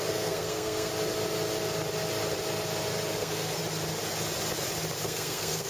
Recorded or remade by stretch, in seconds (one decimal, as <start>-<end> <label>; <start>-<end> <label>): 0.0-0.9 remade; 0.9-3.2 recorded; 3.2-3.6 remade; 3.6-5.0 recorded; 5.0-5.7 remade